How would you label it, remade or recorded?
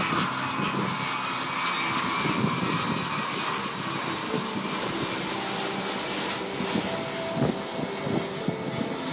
recorded